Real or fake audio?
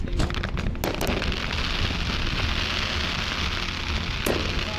real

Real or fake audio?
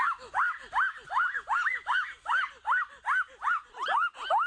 real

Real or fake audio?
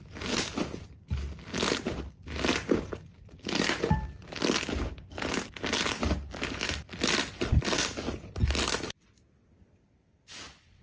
real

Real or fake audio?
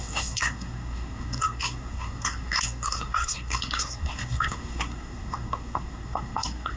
fake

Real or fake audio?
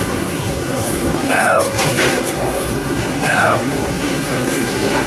fake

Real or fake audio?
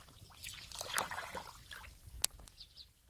real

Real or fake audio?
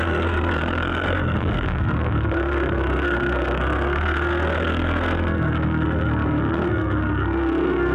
fake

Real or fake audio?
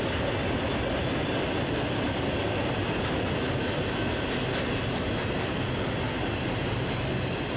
real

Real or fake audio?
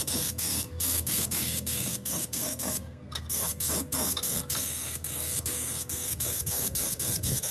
fake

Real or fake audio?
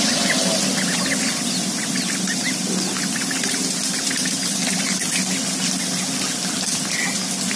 real